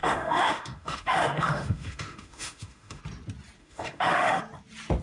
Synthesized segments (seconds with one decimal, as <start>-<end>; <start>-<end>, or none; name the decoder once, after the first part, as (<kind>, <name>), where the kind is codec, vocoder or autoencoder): 0.0-3.0 (autoencoder, DAC-VAE); 3.6-4.4

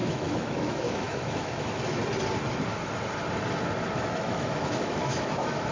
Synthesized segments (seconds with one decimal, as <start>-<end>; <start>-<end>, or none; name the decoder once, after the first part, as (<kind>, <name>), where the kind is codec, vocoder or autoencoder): 0.0-2.0 (autoencoder, DAC-VAE); 4.0-5.7

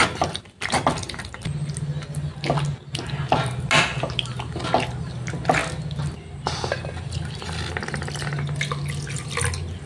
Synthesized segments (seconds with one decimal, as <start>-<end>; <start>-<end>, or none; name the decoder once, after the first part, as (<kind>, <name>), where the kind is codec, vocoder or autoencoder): none

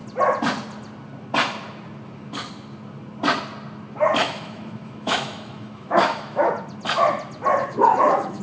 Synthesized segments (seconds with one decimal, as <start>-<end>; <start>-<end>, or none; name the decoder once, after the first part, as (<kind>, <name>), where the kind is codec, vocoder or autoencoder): 4.2-6.5 (autoencoder, DAC-VAE); 7.6-8.4

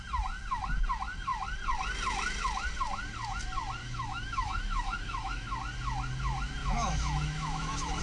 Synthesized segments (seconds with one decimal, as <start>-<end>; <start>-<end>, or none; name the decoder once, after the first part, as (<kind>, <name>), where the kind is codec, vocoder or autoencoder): 3.8-5.6 (autoencoder, DAC-VAE); 6.6-8.0